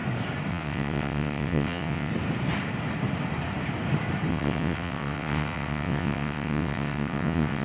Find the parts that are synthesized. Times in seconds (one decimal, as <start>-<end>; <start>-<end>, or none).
0.5-2.1; 4.3-7.6